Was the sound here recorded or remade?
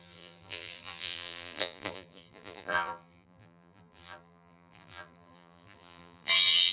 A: remade